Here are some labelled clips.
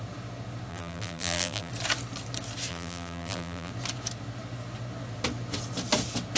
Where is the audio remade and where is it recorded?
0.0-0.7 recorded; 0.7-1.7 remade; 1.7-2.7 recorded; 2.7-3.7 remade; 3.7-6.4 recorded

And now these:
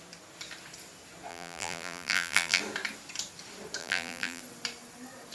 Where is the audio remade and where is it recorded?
0.0-1.3 recorded; 1.3-2.6 remade; 2.6-3.8 recorded; 3.8-4.4 remade; 4.4-5.3 recorded

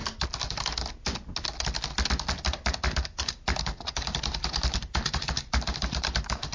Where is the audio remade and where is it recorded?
0.0-3.2 recorded; 3.2-6.5 remade

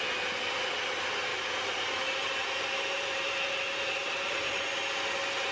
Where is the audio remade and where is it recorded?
0.0-1.3 recorded; 1.3-4.6 remade; 4.6-5.5 recorded

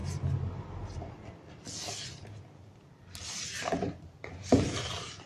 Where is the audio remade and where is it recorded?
0.0-3.2 recorded; 3.2-5.3 remade

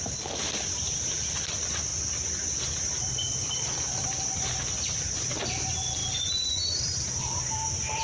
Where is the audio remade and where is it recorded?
0.0-6.0 remade; 6.0-6.7 recorded; 6.7-8.0 remade

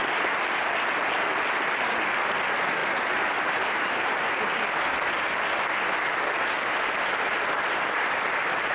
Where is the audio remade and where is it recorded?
0.0-2.8 recorded; 2.8-4.4 remade; 4.4-8.7 recorded